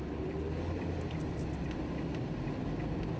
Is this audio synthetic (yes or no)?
no